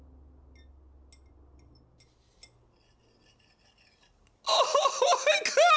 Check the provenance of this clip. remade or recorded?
recorded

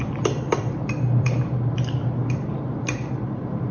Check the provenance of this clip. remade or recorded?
remade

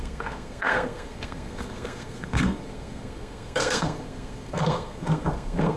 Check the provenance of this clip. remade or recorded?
remade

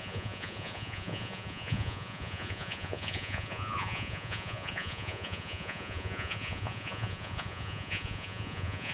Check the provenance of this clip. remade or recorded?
remade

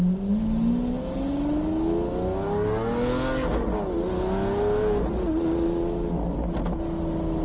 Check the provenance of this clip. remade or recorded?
recorded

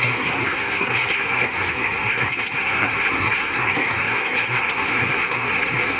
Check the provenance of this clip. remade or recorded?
remade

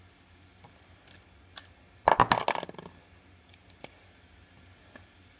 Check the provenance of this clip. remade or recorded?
recorded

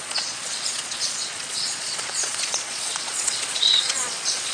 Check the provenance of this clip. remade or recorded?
remade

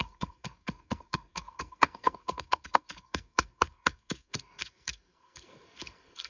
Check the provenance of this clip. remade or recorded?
remade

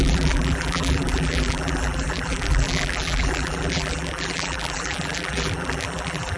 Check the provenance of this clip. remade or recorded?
remade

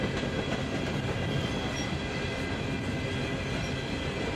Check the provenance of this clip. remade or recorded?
recorded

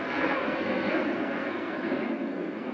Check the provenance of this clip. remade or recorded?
remade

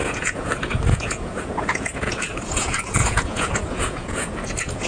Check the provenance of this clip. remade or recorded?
remade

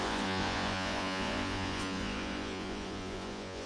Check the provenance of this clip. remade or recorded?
remade